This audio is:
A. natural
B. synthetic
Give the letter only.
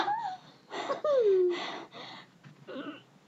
A